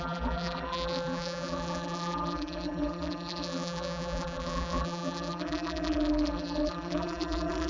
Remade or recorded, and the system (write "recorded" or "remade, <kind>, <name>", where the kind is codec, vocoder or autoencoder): remade, vocoder, BigVGAN v2